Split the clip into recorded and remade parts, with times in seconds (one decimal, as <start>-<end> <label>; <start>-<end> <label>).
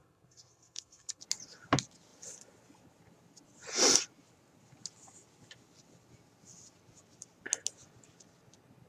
0.0-1.2 remade; 1.2-8.9 recorded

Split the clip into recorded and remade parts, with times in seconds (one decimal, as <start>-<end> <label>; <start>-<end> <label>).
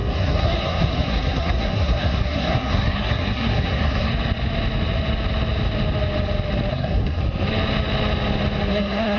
0.0-4.1 remade; 4.1-6.7 recorded; 6.7-7.2 remade; 7.2-8.7 recorded; 8.7-9.2 remade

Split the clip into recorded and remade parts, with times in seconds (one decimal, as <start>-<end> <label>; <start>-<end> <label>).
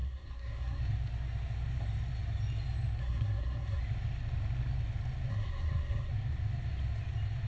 0.0-0.8 remade; 0.8-3.0 recorded; 3.0-3.8 remade; 3.8-5.3 recorded; 5.3-6.1 remade; 6.1-7.5 recorded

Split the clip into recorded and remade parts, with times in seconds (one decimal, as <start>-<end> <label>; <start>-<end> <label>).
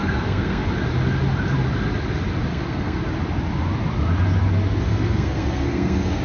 0.0-0.7 remade; 0.7-2.5 recorded; 2.5-3.0 remade; 3.0-4.9 recorded; 4.9-6.2 remade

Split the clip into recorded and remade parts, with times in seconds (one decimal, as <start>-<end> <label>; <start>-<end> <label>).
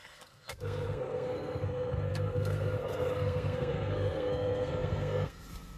0.0-5.8 remade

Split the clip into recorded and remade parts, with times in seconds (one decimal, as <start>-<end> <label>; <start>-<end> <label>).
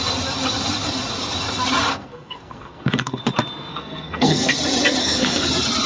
0.0-1.9 recorded; 1.9-3.2 remade; 3.2-3.7 recorded; 3.7-4.5 remade; 4.5-5.0 recorded; 5.0-5.5 remade; 5.5-5.9 recorded